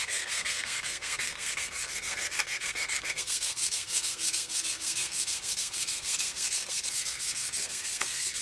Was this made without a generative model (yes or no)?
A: no